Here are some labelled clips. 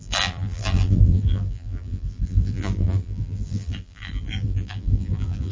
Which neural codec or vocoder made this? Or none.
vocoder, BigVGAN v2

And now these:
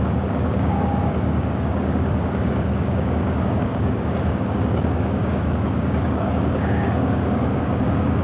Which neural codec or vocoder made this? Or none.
codec, DAC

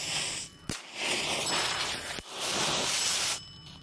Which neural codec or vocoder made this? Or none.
none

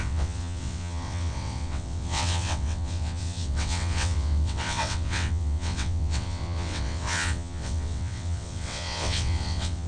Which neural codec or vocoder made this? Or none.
vocoder, WaveNeXt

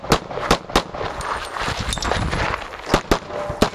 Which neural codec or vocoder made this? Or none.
none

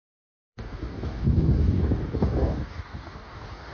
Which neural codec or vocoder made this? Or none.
codec, DAC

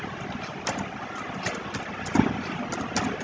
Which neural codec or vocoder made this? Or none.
none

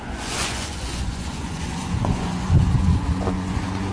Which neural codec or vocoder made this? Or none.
vocoder, Vocos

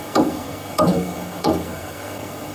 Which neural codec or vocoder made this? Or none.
codec, SNAC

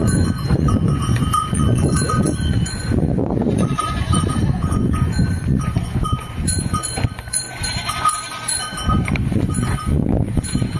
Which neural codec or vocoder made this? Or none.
vocoder, Vocos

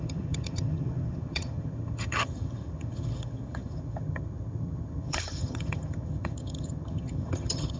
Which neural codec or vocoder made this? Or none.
vocoder, HiFi-GAN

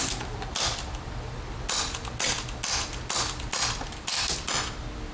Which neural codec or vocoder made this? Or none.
none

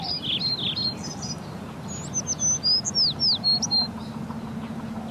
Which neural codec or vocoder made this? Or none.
none